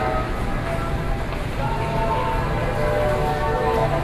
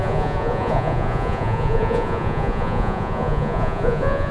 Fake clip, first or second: second